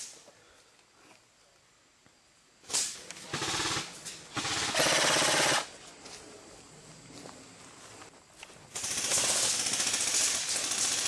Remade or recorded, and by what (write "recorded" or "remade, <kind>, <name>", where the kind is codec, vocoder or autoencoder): recorded